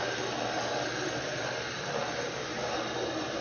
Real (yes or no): yes